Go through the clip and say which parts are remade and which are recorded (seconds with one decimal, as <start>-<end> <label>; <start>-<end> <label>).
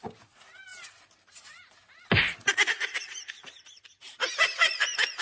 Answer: 0.0-0.7 recorded; 0.7-3.8 remade; 3.8-5.2 recorded